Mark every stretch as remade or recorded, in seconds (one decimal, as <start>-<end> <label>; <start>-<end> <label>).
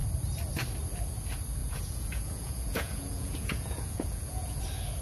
0.0-1.6 recorded; 1.6-4.6 remade; 4.6-5.0 recorded